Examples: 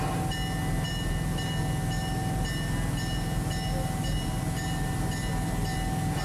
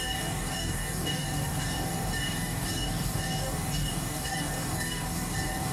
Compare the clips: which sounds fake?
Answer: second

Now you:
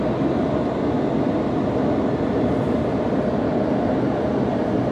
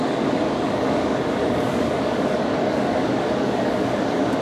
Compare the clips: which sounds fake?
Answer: second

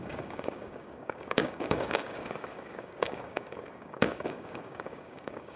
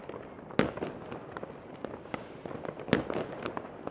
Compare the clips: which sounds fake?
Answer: first